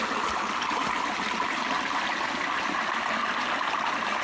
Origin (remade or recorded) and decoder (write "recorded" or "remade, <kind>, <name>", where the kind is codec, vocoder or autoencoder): recorded